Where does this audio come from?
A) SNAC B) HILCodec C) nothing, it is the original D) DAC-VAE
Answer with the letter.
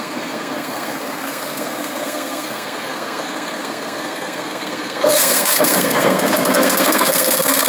A